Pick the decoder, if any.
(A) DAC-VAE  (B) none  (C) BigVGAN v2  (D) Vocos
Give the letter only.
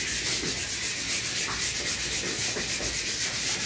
B